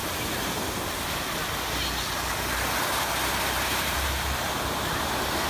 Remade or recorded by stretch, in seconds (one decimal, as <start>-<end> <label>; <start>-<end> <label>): 0.0-3.3 recorded; 3.3-5.5 remade

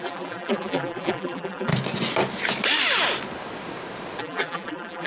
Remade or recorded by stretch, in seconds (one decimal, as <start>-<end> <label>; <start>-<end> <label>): 0.0-1.7 remade; 1.7-4.2 recorded; 4.2-5.1 remade

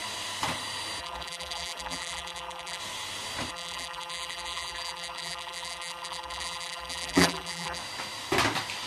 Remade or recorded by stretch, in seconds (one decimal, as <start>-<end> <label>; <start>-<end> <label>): 0.0-1.0 recorded; 1.0-2.8 remade; 2.8-3.5 recorded; 3.5-7.8 remade; 7.8-8.9 recorded

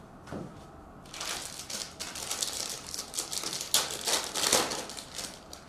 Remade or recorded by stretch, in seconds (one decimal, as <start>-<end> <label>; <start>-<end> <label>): 0.0-5.7 recorded

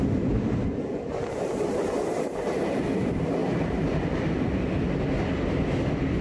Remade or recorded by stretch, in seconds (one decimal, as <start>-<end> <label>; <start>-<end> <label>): 0.0-3.4 recorded; 3.4-4.2 remade; 4.2-6.2 recorded

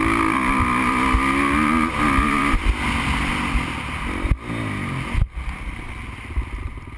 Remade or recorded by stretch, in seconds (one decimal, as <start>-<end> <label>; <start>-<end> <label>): 0.0-7.0 recorded